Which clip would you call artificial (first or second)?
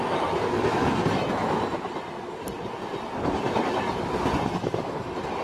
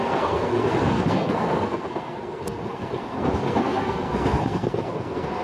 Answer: second